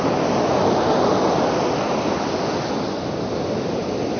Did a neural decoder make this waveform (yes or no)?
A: no